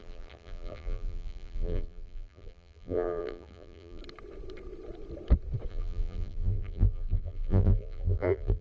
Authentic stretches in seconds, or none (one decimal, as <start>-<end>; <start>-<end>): 4.0-5.7